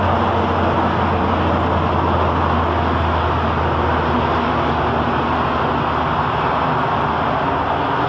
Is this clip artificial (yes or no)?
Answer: no